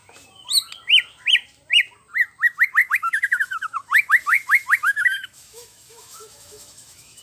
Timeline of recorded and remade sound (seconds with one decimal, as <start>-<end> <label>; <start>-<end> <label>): 0.0-2.8 recorded; 2.8-7.2 remade